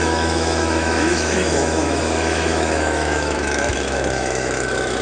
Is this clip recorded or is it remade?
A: remade